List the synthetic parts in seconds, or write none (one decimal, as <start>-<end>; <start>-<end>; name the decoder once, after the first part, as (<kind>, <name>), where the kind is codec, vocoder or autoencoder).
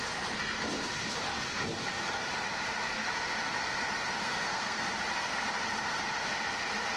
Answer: 4.2-4.9 (codec, SNAC)